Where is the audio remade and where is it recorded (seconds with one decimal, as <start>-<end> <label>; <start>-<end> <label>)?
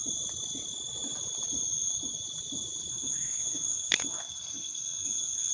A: 0.0-2.9 recorded; 2.9-5.5 remade